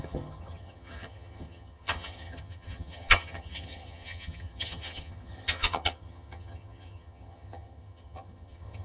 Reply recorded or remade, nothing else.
remade